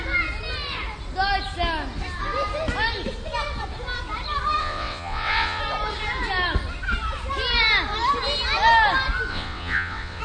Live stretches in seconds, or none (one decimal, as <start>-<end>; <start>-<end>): 0.0-4.6; 5.6-9.3